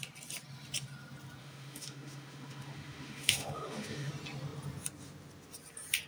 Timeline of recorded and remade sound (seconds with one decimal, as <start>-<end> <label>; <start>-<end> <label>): 0.0-1.4 recorded; 1.4-4.1 remade; 4.1-6.1 recorded

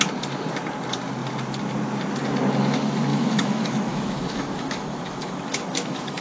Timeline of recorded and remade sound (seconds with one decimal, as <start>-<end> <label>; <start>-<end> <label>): 0.0-3.1 recorded; 3.1-6.2 remade

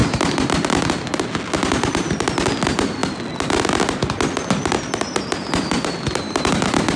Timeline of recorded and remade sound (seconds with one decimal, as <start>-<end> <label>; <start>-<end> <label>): 0.0-7.0 recorded

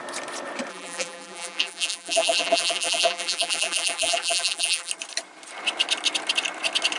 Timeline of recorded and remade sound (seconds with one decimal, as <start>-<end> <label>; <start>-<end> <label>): 0.0-0.7 recorded; 0.7-4.9 remade; 4.9-7.0 recorded